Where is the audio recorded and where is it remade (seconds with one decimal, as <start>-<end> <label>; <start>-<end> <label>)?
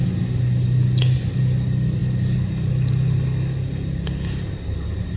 0.0-5.2 recorded